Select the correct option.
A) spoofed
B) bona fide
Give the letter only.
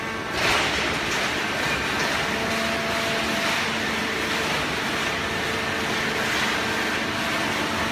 B